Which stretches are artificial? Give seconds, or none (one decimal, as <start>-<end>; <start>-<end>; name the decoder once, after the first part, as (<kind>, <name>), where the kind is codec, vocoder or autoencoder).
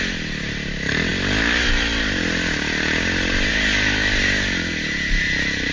none